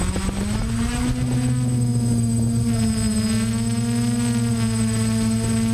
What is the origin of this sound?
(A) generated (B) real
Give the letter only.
B